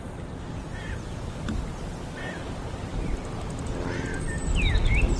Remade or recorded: recorded